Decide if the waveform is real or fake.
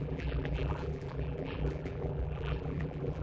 fake